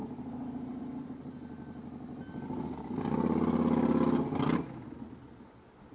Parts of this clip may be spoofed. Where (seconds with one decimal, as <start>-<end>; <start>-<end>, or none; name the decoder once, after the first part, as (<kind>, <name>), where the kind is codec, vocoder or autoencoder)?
0.0-0.8 (vocoder, BigVGAN v2)